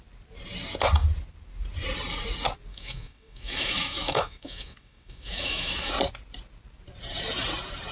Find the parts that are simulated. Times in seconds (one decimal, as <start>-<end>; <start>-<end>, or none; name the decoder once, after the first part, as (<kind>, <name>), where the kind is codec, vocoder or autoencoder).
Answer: 2.7-5.9 (autoencoder, DAC-VAE)